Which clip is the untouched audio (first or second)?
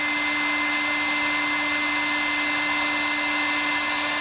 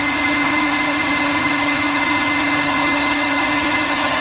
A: first